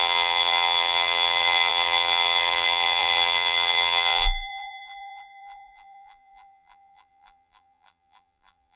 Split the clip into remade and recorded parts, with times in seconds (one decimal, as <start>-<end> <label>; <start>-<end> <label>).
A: 0.0-8.8 remade